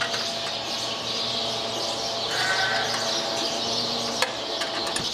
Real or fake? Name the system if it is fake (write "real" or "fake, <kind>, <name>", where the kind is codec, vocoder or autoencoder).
real